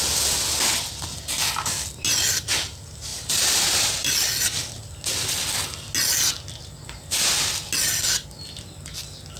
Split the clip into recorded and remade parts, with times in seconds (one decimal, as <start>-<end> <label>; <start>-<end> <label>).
0.0-3.1 recorded; 3.1-4.1 remade; 4.1-9.4 recorded